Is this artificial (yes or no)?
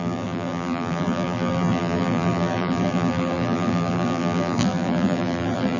yes